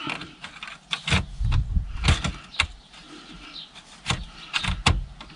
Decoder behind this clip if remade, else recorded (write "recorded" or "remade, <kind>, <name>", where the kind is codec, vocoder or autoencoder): recorded